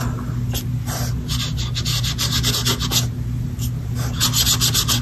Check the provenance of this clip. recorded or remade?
recorded